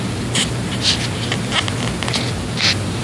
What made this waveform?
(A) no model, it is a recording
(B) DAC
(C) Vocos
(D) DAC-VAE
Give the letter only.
A